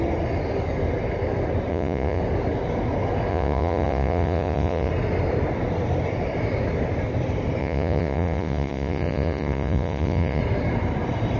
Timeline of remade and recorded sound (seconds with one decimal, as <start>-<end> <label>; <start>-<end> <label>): 0.0-1.7 recorded; 1.7-2.2 remade; 2.2-3.3 recorded; 3.3-4.9 remade; 4.9-7.6 recorded; 7.6-10.4 remade; 10.4-11.4 recorded